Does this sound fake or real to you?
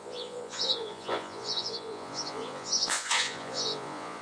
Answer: fake